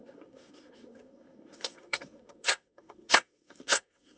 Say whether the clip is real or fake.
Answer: fake